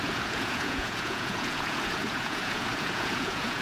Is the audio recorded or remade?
remade